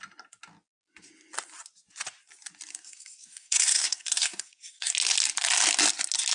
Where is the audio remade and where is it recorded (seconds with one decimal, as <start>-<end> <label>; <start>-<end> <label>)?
0.0-2.7 recorded; 2.7-4.9 remade; 4.9-6.3 recorded

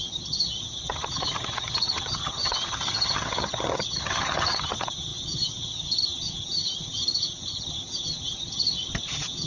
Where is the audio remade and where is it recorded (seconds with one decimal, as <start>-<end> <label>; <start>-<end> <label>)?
0.0-9.5 remade

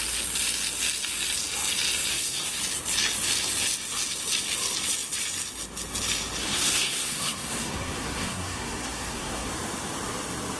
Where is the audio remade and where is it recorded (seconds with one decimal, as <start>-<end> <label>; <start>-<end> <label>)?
0.0-2.1 recorded; 2.1-2.6 remade; 2.6-6.4 recorded; 6.4-9.5 remade; 9.5-10.6 recorded

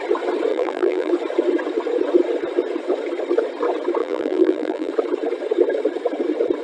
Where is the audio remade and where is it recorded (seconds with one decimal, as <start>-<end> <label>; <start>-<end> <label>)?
0.0-0.5 recorded; 0.5-1.1 remade; 1.1-4.0 recorded; 4.0-4.9 remade; 4.9-6.6 recorded